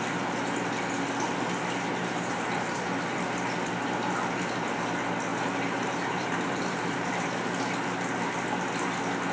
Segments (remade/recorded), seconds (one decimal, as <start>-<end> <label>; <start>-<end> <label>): 0.0-2.0 recorded; 2.0-3.0 remade; 3.0-5.3 recorded; 5.3-7.1 remade; 7.1-9.3 recorded